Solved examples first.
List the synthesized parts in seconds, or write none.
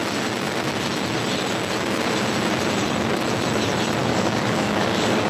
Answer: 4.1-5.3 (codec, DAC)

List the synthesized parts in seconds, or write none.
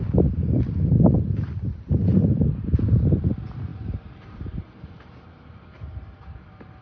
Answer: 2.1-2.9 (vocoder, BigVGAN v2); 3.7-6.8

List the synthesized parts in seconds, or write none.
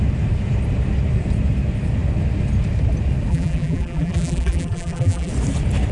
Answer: 3.3-5.3 (vocoder, BigVGAN v2)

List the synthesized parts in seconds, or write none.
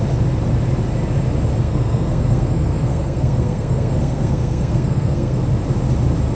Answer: 1.6-5.4 (codec, SNAC)